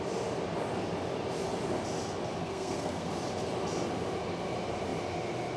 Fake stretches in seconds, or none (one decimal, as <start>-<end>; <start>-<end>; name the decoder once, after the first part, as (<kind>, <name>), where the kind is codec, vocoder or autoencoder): 2.4-3.1 (codec, SNAC)